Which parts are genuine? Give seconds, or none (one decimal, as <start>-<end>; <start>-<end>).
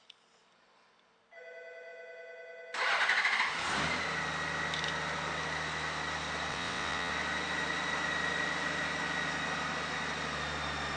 0.0-6.5; 7.1-11.0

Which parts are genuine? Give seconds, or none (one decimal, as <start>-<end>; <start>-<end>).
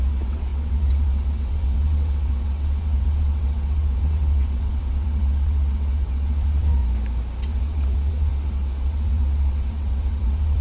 6.8-7.4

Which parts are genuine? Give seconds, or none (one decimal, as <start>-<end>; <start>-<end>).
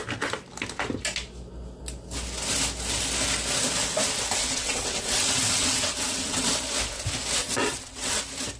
0.0-4.4; 6.5-7.4; 8.2-8.6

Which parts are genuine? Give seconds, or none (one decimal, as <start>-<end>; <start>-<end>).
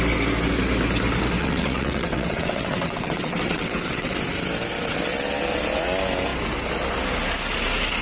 0.0-1.4; 4.1-8.0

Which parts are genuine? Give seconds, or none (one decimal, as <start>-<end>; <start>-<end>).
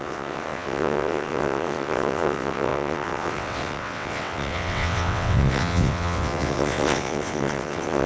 none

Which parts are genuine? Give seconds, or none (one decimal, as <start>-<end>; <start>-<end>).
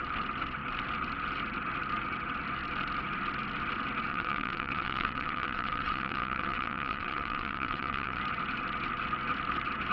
0.0-4.1; 8.2-9.9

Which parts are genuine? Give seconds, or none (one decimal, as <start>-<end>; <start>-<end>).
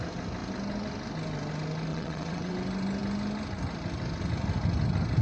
0.0-1.9; 2.5-5.2